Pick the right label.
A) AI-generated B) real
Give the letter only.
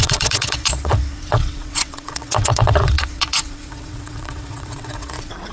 A